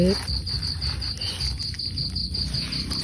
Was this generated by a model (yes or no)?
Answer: no